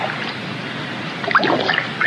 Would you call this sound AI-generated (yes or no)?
no